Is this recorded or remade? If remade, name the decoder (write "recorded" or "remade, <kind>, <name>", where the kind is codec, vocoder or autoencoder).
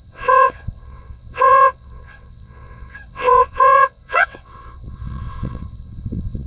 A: remade, vocoder, WaveNeXt